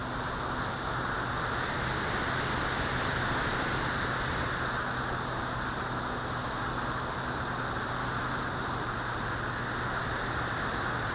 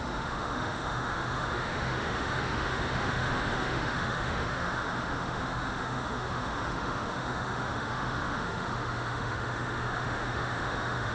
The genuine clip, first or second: first